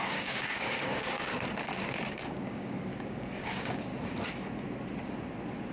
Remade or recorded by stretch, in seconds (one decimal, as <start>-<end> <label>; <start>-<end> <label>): 0.0-1.3 remade; 1.3-2.1 recorded; 2.1-3.9 remade; 3.9-5.7 recorded